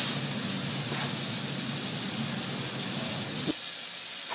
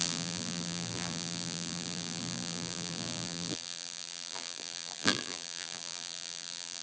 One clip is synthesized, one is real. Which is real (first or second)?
first